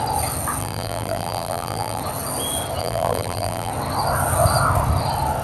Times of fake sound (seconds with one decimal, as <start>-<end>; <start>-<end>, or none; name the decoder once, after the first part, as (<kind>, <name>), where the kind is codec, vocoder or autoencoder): 0.6-2.0 (vocoder, BigVGAN v2); 2.8-3.7